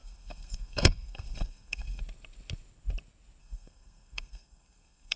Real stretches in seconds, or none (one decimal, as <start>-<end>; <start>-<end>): 2.0-3.4